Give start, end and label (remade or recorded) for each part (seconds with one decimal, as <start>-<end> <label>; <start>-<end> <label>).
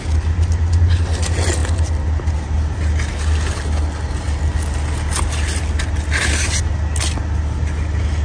0.0-8.2 recorded